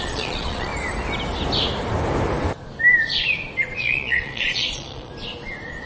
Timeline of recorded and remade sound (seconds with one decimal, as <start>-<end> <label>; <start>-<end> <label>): 0.0-0.7 remade; 0.7-3.8 recorded; 3.8-5.1 remade; 5.1-5.9 recorded